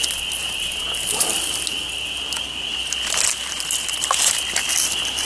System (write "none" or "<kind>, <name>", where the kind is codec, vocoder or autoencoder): none